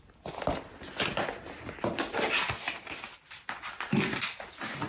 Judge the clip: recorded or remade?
recorded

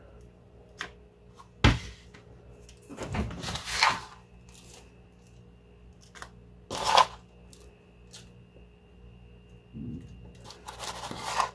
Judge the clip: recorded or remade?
recorded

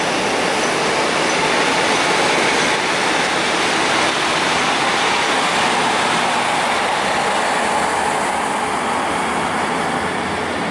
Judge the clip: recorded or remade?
recorded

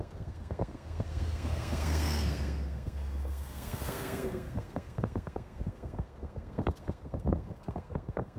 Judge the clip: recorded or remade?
remade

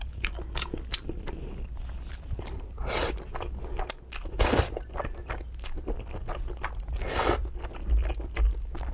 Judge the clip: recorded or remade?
recorded